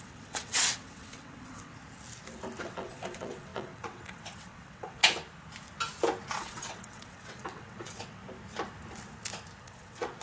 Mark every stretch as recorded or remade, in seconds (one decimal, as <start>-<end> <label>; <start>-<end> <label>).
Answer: 0.0-1.7 remade; 1.7-2.6 recorded; 2.6-5.0 remade; 5.0-6.3 recorded; 6.3-8.2 remade; 8.2-9.6 recorded; 9.6-10.2 remade